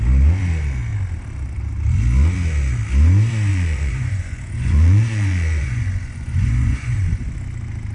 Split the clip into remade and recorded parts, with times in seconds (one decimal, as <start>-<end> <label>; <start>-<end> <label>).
0.0-3.5 recorded; 3.5-7.3 remade; 7.3-7.9 recorded